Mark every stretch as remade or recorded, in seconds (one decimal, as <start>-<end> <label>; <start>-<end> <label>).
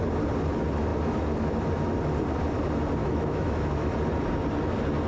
0.0-3.0 recorded; 3.0-3.9 remade; 3.9-5.1 recorded